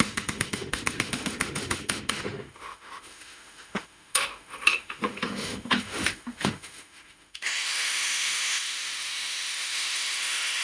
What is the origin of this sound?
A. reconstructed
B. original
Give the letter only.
A